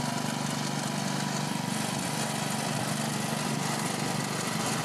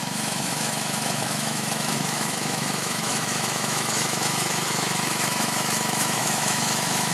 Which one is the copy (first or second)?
second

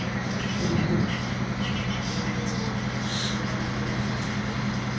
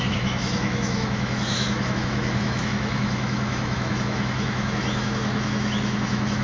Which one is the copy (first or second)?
second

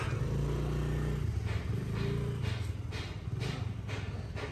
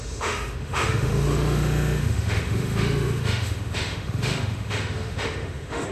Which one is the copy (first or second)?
second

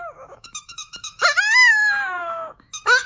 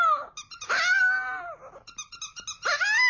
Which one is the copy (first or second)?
first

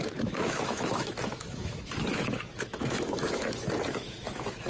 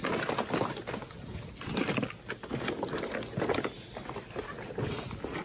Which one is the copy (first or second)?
first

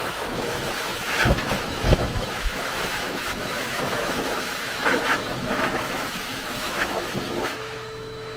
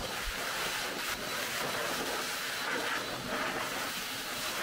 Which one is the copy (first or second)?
first